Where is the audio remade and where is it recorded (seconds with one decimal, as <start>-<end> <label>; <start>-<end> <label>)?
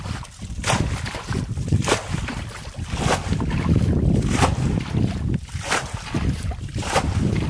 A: 0.0-7.5 remade